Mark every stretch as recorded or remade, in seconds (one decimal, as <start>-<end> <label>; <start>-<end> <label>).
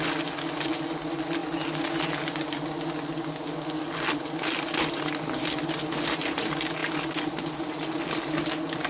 0.0-8.9 recorded